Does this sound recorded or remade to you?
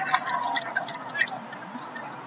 recorded